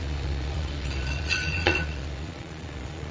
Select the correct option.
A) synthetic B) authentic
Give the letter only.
A